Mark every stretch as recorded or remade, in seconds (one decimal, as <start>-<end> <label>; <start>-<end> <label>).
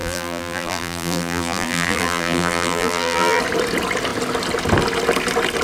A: 0.0-3.4 remade; 3.4-5.6 recorded